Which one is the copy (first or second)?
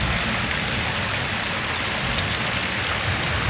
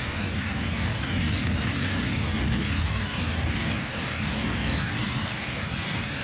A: second